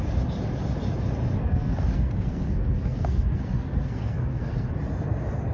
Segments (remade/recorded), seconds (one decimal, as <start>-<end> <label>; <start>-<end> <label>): 0.0-1.4 recorded; 1.4-4.7 remade; 4.7-5.5 recorded